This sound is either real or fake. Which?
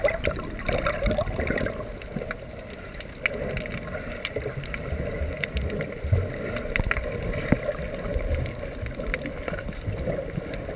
real